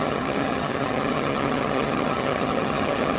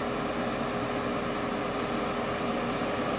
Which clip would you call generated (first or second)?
first